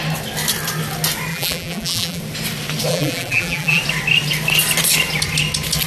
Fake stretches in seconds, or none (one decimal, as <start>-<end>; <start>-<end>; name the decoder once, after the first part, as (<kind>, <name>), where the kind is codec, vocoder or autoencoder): 1.3-2.2 (vocoder, BigVGAN v2); 2.9-3.8